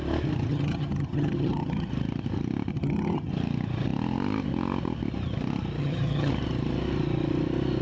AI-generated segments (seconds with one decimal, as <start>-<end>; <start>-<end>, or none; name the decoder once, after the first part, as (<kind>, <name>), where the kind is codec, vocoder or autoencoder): 0.5-1.9 (vocoder, HiFi-GAN); 2.7-3.3; 5.8-6.3